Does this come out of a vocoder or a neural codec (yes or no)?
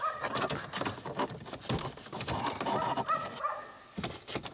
no